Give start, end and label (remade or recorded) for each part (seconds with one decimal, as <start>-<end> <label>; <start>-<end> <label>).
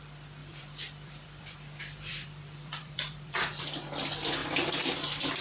0.0-0.4 recorded; 0.4-3.6 remade; 3.6-4.4 recorded; 4.4-5.4 remade